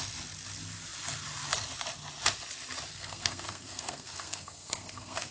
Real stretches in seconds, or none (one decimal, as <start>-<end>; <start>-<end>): 0.0-2.9